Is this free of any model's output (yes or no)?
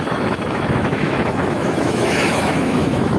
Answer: no